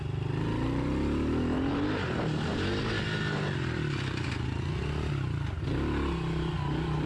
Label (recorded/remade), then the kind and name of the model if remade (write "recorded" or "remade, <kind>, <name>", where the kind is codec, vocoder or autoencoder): recorded